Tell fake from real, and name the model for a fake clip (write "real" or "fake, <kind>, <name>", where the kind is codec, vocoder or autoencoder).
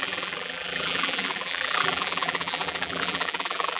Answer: fake, vocoder, BigVGAN v2